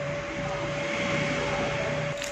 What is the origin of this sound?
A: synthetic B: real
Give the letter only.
A